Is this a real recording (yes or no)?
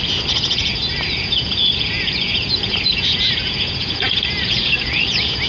no